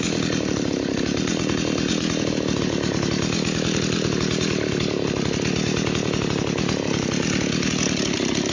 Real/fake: real